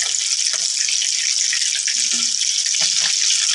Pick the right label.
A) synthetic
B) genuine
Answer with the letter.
B